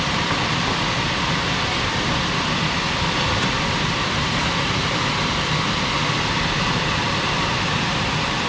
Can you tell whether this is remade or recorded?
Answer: remade